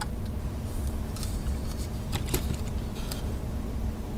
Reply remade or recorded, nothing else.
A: recorded